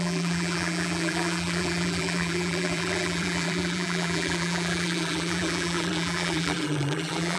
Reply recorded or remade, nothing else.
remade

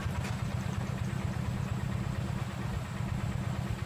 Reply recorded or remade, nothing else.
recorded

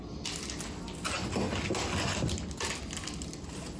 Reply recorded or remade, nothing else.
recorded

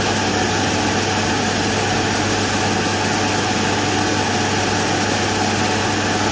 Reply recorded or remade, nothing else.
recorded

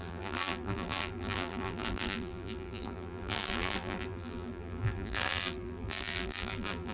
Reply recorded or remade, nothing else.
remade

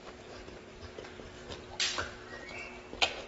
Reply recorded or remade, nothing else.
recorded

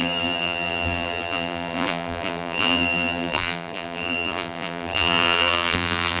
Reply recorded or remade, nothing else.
remade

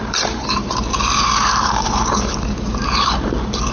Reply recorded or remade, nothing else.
remade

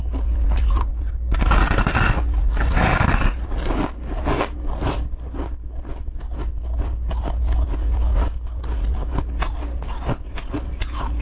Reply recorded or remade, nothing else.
recorded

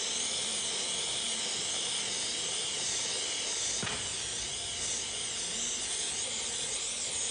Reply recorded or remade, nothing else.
recorded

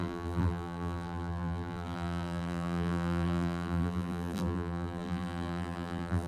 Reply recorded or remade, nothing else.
remade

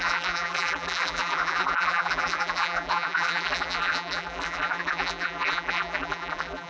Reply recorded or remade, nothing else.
remade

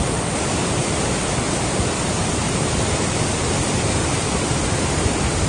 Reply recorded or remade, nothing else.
remade